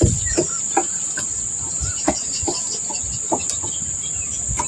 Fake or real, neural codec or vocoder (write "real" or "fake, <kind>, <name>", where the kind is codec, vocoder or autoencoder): real